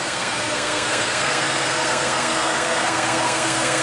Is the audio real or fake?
fake